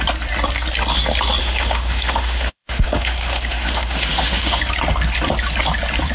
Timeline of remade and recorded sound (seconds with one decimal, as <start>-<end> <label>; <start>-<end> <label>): 0.0-1.4 recorded; 1.4-4.6 remade; 4.6-6.1 recorded